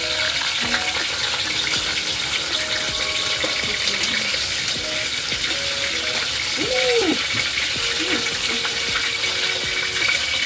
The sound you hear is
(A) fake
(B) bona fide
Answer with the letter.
B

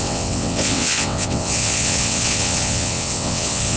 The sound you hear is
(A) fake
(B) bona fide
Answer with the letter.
A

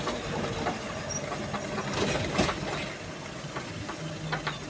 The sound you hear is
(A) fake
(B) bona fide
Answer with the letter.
B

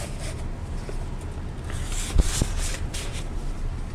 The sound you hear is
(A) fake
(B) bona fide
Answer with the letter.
B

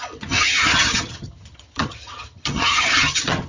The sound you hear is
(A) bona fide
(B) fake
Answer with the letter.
B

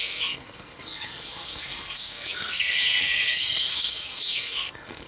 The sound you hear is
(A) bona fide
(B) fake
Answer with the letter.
B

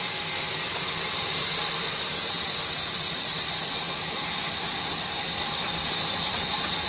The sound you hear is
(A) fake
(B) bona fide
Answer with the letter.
B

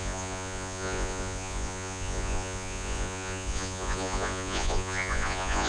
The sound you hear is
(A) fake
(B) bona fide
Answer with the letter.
A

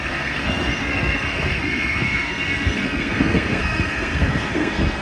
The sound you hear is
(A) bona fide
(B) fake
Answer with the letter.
B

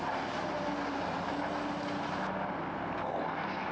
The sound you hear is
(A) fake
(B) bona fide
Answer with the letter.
B